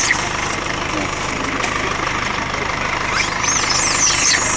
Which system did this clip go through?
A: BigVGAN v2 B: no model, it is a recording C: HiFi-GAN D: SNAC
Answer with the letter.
A